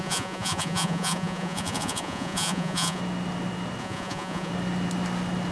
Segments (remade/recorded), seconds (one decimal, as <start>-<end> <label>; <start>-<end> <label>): 0.0-3.0 remade; 3.0-3.8 recorded; 3.8-4.5 remade; 4.5-5.5 recorded